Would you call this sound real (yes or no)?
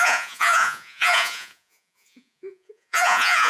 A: no